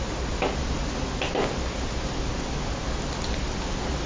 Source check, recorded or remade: recorded